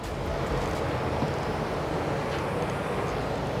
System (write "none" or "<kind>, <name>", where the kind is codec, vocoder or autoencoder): none